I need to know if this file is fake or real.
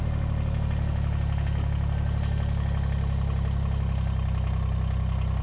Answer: real